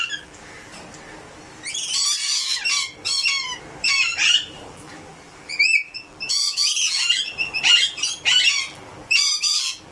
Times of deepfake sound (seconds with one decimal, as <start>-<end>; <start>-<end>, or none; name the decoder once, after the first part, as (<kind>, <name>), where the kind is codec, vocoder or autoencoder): 0.0-0.7 (vocoder, BigVGAN v2); 3.8-9.9